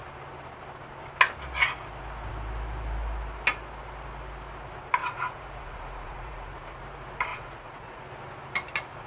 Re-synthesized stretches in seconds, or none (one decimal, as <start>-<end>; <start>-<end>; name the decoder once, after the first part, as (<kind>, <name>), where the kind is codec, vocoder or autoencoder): 5.0-6.8 (vocoder, Vocos); 7.3-8.0

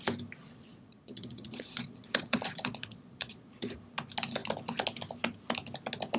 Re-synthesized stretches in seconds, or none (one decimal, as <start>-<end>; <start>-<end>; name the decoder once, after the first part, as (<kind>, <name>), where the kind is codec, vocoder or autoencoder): 0.4-3.7 (vocoder, Vocos)

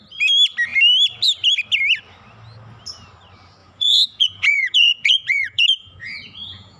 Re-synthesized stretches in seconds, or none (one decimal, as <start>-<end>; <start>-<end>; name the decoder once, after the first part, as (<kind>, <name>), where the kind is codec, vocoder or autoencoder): 3.6-6.8 (vocoder, Vocos)

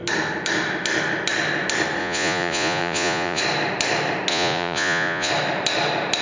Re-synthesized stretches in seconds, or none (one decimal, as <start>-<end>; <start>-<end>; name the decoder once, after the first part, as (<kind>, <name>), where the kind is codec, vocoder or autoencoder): 2.0-3.4 (vocoder, Vocos); 4.3-5.3

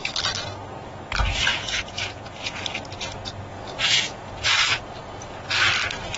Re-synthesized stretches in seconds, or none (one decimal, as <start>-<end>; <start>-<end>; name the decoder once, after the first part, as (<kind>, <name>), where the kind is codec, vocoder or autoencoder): 1.5-2.6 (vocoder, Vocos); 3.5-4.5